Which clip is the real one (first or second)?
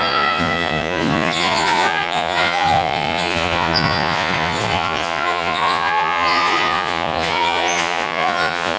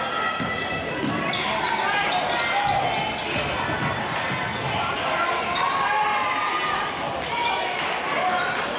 second